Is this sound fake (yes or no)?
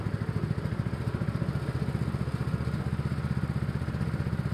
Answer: no